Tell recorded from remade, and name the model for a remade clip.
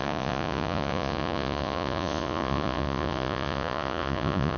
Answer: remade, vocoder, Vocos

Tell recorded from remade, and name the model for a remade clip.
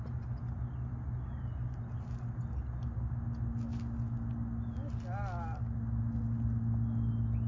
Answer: recorded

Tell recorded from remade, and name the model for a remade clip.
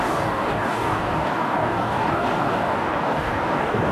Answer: remade, codec, DAC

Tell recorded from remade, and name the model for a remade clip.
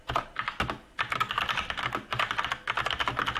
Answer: recorded